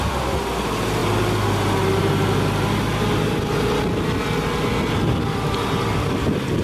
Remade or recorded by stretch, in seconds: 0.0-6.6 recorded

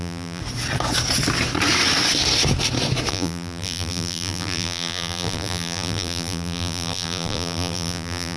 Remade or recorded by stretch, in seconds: 0.0-0.4 remade; 0.4-3.1 recorded; 3.1-8.4 remade